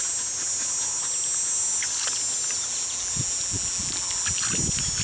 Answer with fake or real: real